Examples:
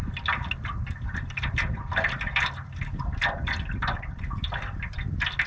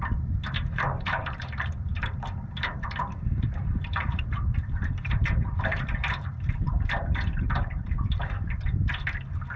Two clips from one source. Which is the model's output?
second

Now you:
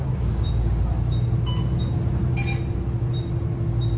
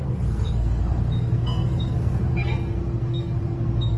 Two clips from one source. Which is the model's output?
second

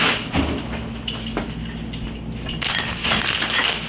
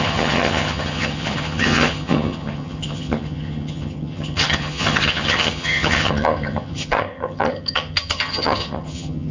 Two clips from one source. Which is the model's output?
second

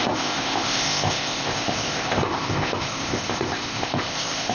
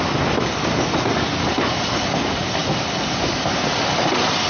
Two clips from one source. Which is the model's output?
first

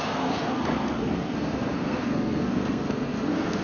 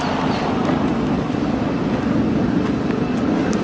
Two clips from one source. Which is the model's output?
first